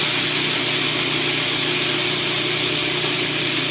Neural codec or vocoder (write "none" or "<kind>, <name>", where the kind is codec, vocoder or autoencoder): none